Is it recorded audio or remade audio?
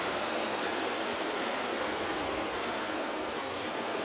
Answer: remade